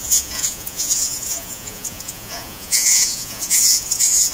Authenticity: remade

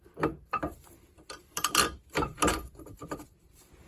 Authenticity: remade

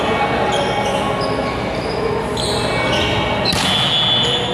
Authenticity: recorded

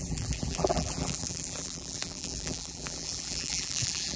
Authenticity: remade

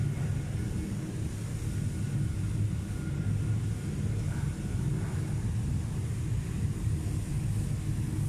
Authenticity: recorded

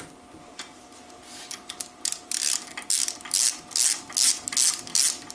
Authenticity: recorded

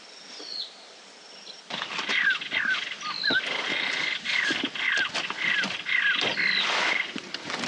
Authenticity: recorded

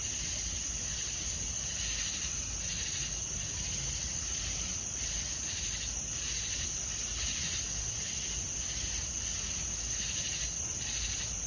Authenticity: recorded